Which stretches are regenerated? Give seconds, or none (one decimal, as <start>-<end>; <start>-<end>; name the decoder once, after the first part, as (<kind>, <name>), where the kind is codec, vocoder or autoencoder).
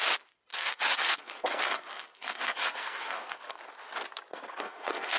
0.5-3.6 (codec, SNAC); 4.3-5.2